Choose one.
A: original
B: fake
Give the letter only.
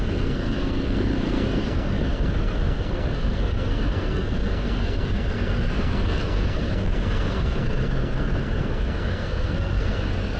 B